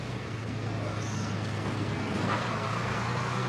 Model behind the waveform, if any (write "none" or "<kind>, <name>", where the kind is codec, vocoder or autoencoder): codec, SNAC